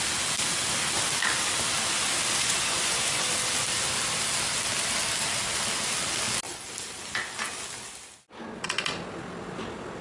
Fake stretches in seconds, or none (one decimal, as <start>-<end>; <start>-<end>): 2.4-3.3

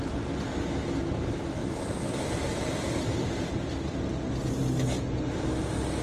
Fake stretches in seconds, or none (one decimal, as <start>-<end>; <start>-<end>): 1.6-4.5